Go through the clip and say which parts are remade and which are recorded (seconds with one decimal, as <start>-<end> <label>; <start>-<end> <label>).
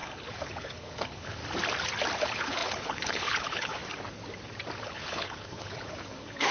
0.0-1.4 remade; 1.4-2.2 recorded; 2.2-3.8 remade; 3.8-4.8 recorded; 4.8-6.5 remade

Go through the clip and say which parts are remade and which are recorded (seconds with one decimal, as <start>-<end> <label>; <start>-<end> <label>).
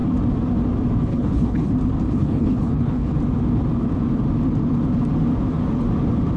0.0-1.1 recorded; 1.1-1.7 remade; 1.7-2.2 recorded; 2.2-3.1 remade; 3.1-6.4 recorded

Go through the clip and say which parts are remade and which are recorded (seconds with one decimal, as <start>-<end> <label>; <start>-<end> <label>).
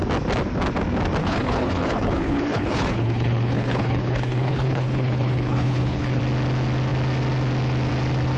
0.0-1.2 recorded; 1.2-6.2 remade; 6.2-8.4 recorded